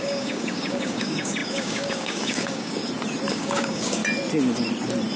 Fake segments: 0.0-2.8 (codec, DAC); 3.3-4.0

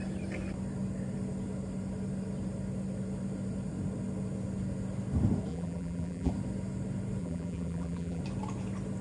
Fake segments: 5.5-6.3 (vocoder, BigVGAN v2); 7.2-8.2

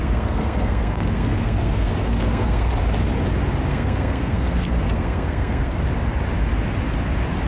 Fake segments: 0.0-2.7 (codec, SNAC); 3.7-5.8